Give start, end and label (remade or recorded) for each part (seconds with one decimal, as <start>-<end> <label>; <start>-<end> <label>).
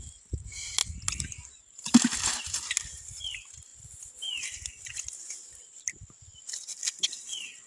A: 0.0-7.7 recorded